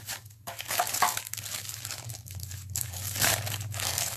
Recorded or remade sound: remade